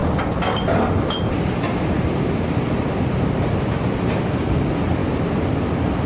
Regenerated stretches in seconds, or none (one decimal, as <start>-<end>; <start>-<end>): 0.0-6.1